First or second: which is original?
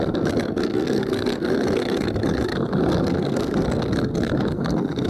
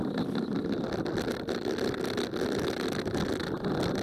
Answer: second